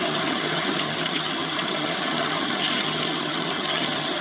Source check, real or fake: fake